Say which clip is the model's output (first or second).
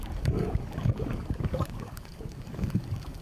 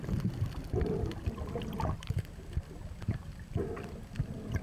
first